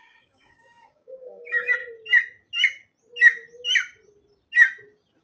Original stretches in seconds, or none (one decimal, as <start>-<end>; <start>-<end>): 1.8-5.2